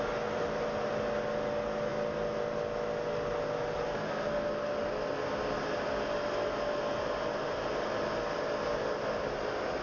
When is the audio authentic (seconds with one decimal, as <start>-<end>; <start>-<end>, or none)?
0.0-9.8